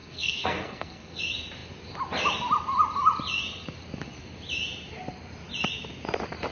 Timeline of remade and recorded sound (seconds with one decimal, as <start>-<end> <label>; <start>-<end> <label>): 0.0-1.2 remade; 1.2-6.5 recorded